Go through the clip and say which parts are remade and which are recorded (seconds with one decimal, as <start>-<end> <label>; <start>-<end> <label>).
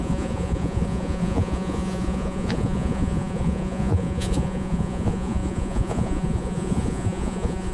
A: 0.0-7.7 remade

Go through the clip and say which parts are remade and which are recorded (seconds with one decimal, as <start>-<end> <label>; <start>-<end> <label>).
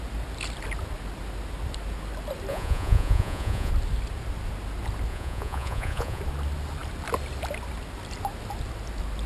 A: 0.0-2.5 recorded; 2.5-3.7 remade; 3.7-5.1 recorded; 5.1-6.2 remade; 6.2-9.3 recorded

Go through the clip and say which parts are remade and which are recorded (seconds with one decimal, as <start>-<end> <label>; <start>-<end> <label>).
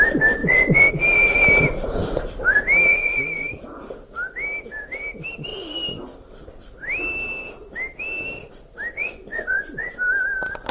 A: 0.0-0.4 recorded; 0.4-0.9 remade; 0.9-2.9 recorded; 2.9-3.5 remade; 3.5-9.0 recorded; 9.0-10.0 remade; 10.0-10.7 recorded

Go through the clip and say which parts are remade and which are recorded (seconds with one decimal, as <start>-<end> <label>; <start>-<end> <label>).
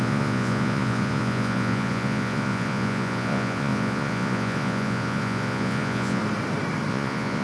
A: 0.0-6.2 remade; 6.2-6.9 recorded; 6.9-7.4 remade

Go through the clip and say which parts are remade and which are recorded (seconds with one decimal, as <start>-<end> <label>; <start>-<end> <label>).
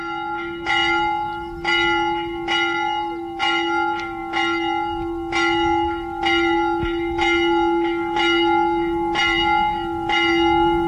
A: 0.0-10.9 recorded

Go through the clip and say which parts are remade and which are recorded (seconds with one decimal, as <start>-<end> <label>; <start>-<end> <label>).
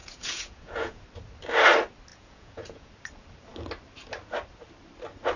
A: 0.0-1.0 remade; 1.0-2.1 recorded; 2.1-2.9 remade; 2.9-5.4 recorded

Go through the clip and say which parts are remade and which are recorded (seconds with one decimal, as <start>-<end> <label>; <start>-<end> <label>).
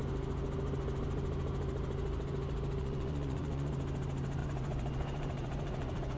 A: 0.0-2.8 recorded; 2.8-3.7 remade; 3.7-4.4 recorded; 4.4-6.2 remade